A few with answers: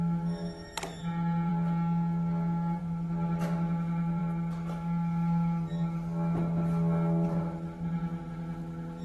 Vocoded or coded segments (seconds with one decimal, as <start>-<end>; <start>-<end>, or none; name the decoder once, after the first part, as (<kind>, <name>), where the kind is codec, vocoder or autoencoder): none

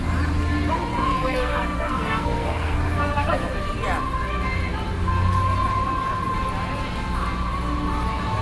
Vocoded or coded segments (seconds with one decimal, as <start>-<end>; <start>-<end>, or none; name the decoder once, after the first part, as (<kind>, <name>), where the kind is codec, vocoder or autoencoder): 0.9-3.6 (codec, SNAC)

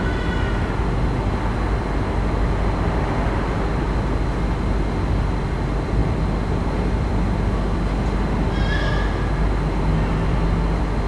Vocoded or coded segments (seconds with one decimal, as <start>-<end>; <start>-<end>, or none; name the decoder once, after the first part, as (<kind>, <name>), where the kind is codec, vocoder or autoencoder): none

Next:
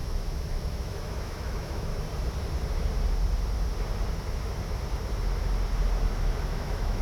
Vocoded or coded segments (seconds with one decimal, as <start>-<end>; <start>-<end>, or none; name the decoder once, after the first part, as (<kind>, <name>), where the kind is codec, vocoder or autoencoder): 0.0-1.9 (autoencoder, DAC-VAE); 6.1-7.0

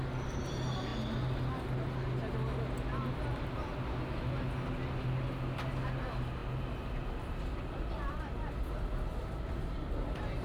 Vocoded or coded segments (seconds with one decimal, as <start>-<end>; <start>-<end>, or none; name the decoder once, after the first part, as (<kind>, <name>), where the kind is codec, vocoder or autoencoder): none

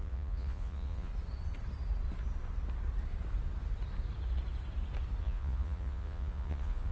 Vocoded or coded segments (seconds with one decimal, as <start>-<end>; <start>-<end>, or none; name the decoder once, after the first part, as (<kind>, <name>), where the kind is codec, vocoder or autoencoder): 0.0-1.1 (vocoder, Vocos); 5.2-6.9

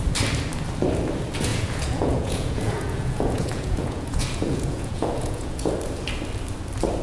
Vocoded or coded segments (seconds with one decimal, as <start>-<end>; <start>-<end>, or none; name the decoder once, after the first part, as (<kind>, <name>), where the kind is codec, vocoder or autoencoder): 1.5-5.7 (vocoder, Vocos)

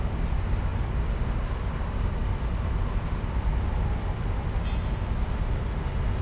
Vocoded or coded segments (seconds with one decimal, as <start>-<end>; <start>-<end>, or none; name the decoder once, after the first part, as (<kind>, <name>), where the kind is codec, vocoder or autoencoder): none